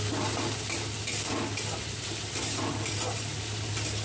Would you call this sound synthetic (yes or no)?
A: no